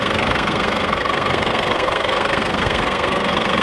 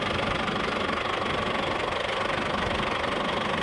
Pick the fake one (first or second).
first